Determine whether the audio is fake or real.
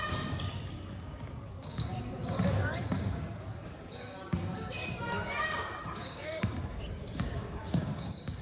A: fake